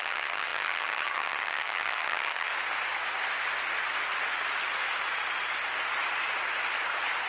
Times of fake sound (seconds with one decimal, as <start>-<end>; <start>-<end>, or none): 0.0-2.5